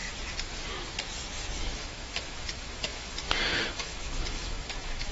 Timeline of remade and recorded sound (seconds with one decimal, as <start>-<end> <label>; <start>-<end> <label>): 0.0-1.6 recorded; 1.6-5.1 remade

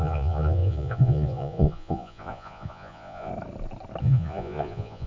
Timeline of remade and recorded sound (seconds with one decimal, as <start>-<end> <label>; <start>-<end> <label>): 0.0-3.3 remade; 3.3-4.0 recorded; 4.0-5.1 remade

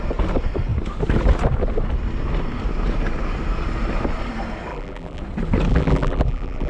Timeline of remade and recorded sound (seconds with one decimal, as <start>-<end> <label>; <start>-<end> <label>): 0.0-4.7 recorded; 4.7-5.2 remade; 5.2-5.7 recorded; 5.7-6.7 remade

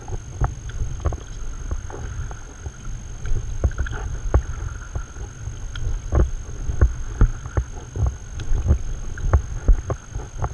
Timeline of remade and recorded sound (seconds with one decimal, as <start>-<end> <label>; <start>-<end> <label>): 0.0-10.5 recorded

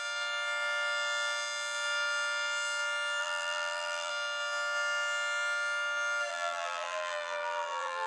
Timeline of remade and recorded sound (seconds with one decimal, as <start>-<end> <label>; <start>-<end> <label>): 0.0-3.2 recorded; 3.2-4.1 remade; 4.1-6.3 recorded; 6.3-8.1 remade

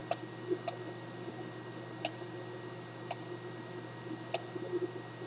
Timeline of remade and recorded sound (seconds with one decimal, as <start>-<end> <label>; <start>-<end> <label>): 0.0-5.3 recorded

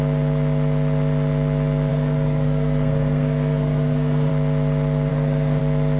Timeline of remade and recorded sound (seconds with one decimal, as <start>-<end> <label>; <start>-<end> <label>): 0.0-1.9 recorded; 1.9-4.3 remade; 4.3-5.1 recorded; 5.1-5.6 remade; 5.6-6.0 recorded